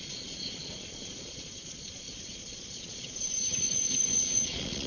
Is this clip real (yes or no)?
no